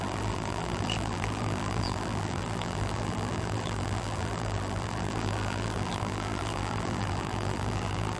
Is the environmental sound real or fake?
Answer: fake